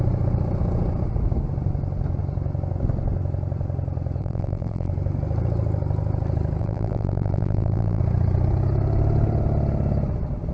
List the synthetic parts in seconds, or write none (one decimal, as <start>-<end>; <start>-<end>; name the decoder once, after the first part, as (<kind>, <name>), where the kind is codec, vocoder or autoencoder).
4.2-4.9 (vocoder, BigVGAN v2); 6.6-8.0